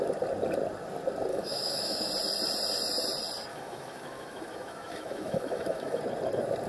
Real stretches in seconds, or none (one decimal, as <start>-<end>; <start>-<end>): 0.0-1.3; 2.1-3.5; 6.0-6.7